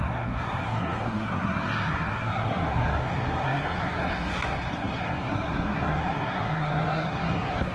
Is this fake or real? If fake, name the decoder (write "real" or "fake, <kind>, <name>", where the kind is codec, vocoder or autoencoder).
fake, codec, SNAC